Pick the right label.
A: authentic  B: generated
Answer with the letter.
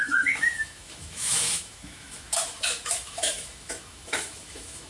B